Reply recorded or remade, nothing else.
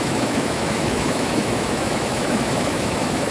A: remade